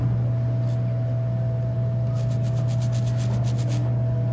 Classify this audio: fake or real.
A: real